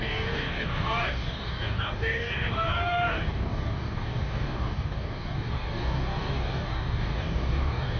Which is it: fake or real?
fake